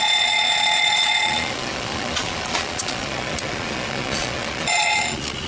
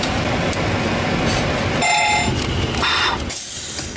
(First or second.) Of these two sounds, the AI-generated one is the first